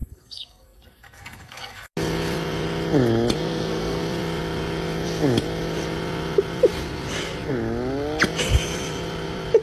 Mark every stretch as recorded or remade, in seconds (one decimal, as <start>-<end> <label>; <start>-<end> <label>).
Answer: 0.0-1.9 remade; 1.9-3.4 recorded; 3.4-4.0 remade; 4.0-9.6 recorded